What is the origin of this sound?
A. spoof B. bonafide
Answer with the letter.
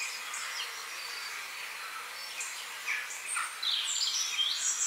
B